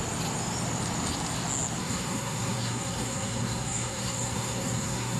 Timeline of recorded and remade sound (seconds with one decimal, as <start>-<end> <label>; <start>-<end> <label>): 0.0-1.8 recorded; 1.8-5.2 remade